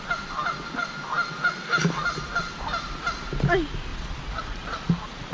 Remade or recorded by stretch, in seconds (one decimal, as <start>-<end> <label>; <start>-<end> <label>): 0.0-3.9 recorded; 3.9-5.3 remade